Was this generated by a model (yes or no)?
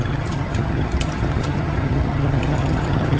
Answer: yes